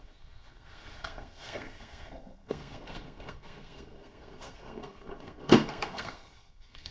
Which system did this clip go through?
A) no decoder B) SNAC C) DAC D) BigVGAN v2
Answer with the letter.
B